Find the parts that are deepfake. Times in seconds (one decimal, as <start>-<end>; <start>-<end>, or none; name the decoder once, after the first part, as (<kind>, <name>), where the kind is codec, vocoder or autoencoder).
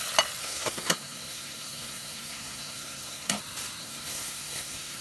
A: 0.4-3.4 (codec, SNAC); 3.8-5.0